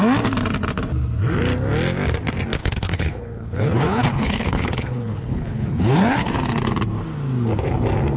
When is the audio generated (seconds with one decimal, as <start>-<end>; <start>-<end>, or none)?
2.6-6.3